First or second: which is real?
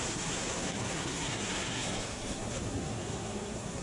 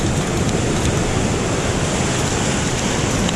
second